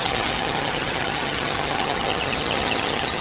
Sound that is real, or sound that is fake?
fake